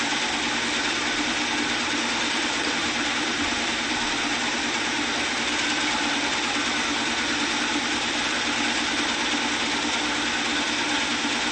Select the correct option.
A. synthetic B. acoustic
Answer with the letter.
B